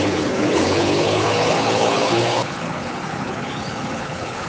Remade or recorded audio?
remade